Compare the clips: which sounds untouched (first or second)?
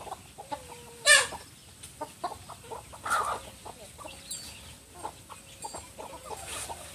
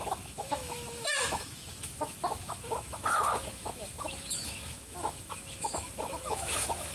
first